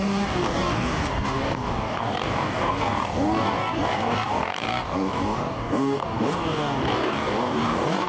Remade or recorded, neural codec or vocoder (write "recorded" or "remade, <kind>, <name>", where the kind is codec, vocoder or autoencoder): remade, codec, DAC